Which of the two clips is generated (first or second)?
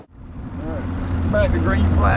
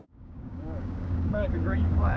second